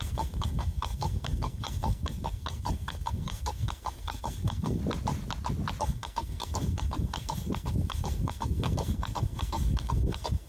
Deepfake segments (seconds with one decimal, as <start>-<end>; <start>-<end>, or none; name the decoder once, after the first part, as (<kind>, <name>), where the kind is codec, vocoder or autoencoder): 0.0-4.8 (codec, SNAC); 5.8-10.5